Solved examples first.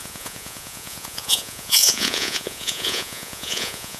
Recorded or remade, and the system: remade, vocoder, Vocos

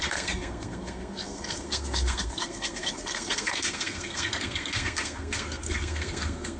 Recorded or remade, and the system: remade, codec, SNAC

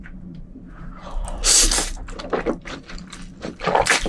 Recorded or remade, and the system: remade, vocoder, BigVGAN v2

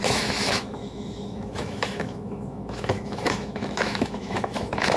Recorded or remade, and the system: remade, autoencoder, DAC-VAE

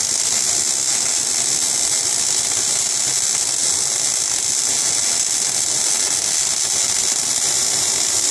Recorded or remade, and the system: recorded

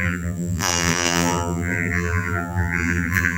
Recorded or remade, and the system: remade, vocoder, BigVGAN v2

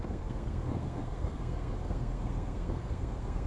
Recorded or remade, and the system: remade, codec, SNAC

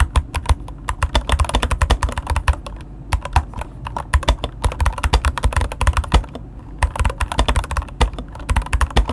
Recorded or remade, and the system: recorded